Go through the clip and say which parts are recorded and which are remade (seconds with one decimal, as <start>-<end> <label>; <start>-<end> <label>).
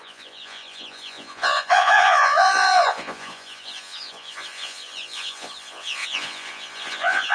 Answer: 0.0-7.3 remade